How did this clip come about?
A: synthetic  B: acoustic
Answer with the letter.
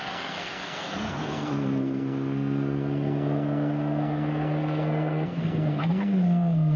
A